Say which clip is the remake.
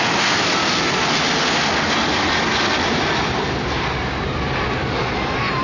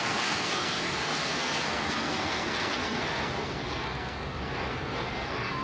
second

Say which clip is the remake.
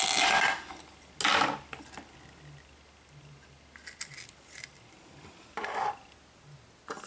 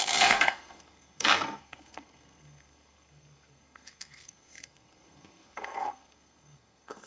second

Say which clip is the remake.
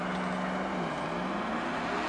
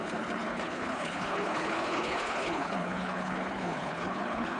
second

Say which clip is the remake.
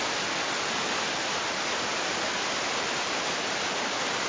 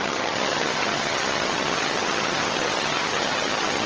second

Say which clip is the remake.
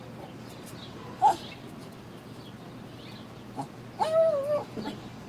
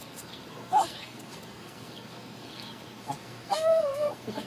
second